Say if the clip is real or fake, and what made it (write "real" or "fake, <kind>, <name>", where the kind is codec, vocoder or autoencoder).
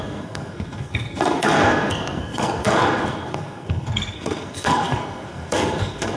fake, codec, SNAC